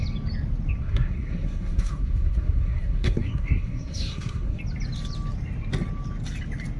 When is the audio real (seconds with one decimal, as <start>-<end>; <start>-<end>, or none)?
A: 0.0-0.8; 4.6-6.8